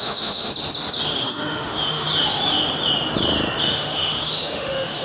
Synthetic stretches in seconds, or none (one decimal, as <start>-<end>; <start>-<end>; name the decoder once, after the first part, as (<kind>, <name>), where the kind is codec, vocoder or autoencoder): 0.0-0.5 (autoencoder, DAC-VAE); 1.2-2.1; 3.6-5.0